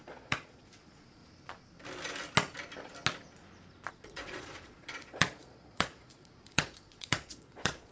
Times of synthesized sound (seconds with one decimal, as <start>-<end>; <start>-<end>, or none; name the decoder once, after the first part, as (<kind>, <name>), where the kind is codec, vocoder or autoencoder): 0.0-1.2 (vocoder, Vocos); 3.9-7.9